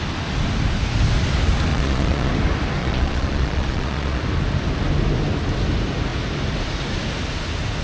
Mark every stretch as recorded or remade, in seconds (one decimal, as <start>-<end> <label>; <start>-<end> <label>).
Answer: 0.0-1.7 recorded; 1.7-2.3 remade; 2.3-2.8 recorded; 2.8-4.2 remade; 4.2-7.8 recorded